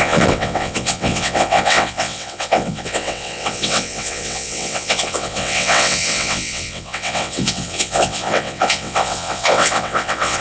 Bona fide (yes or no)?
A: no